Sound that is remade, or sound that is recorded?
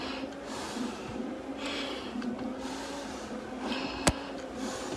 recorded